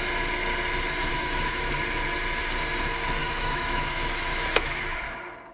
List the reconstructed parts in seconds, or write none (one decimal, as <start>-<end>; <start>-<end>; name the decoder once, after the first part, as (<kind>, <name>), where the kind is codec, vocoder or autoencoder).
1.1-1.7 (autoencoder, DAC-VAE); 3.2-5.0